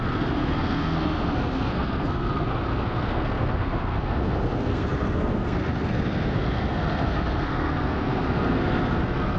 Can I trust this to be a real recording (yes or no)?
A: no